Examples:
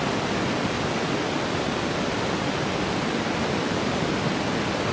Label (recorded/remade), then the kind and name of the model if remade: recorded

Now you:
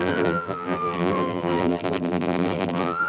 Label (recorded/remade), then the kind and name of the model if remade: remade, vocoder, BigVGAN v2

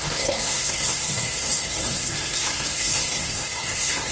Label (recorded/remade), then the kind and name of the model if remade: remade, codec, SNAC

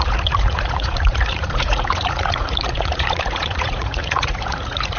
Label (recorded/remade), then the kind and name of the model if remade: remade, vocoder, Vocos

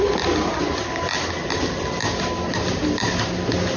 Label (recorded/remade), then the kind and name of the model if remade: recorded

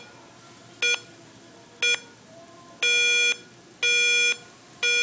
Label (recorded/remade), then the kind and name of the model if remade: recorded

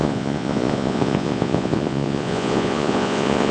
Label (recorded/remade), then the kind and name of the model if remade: remade, vocoder, Vocos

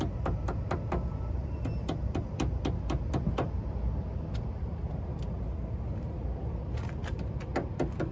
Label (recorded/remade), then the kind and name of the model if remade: recorded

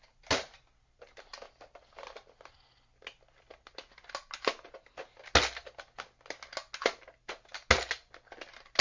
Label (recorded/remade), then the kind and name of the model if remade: recorded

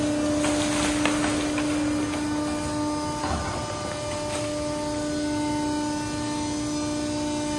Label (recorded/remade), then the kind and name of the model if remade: recorded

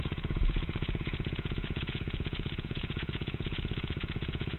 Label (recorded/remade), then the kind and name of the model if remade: remade, vocoder, Vocos